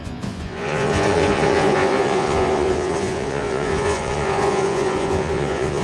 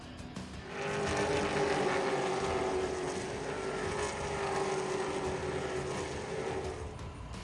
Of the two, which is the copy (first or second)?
first